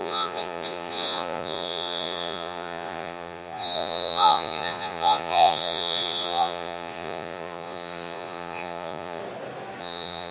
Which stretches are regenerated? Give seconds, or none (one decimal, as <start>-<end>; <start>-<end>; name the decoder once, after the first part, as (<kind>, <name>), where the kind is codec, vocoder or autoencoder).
0.0-9.2 (vocoder, Vocos); 9.8-10.3